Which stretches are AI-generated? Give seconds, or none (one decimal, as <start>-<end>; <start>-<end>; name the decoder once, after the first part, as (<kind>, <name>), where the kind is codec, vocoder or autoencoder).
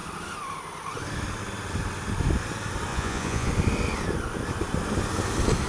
2.9-3.5 (vocoder, Vocos)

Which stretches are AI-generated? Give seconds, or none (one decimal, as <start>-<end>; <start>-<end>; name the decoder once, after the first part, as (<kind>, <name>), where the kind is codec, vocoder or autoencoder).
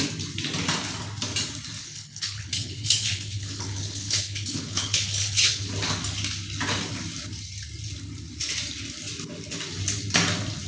1.8-5.7 (codec, HILCodec)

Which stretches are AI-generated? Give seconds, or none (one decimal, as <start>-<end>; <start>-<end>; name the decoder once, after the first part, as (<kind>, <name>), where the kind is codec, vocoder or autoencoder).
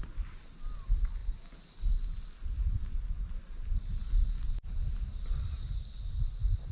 none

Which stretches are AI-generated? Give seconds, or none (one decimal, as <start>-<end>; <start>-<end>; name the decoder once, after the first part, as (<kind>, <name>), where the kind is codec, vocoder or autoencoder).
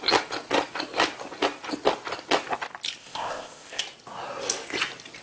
3.0-3.8 (codec, ZipCodec)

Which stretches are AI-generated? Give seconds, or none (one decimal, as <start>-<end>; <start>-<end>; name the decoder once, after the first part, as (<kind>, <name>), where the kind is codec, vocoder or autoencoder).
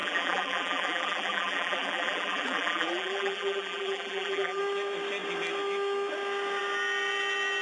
0.0-4.6 (vocoder, BigVGAN v2)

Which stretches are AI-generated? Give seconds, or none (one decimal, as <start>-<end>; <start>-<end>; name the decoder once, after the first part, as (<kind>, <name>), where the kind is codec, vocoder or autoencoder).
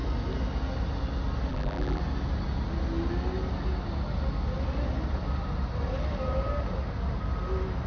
1.5-2.0 (vocoder, BigVGAN v2)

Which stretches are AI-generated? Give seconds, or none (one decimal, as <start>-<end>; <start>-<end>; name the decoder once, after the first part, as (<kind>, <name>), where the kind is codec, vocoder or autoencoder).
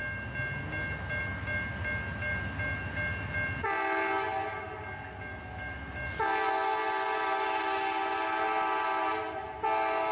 none